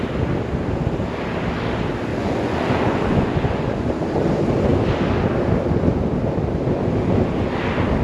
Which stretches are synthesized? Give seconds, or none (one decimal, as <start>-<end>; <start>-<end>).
2.1-3.9